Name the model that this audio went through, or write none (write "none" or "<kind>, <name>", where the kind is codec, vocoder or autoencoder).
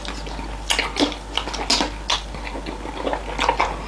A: none